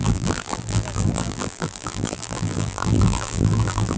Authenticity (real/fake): fake